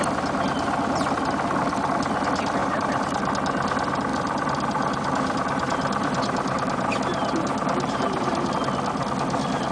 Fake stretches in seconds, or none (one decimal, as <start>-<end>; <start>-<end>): 2.6-3.3; 4.1-8.5